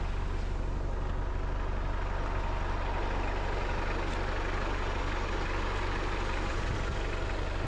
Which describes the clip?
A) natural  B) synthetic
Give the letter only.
A